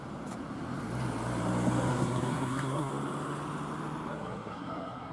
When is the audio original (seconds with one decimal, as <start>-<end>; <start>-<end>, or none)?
0.0-1.9; 2.9-4.1